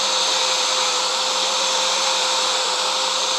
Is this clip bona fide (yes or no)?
no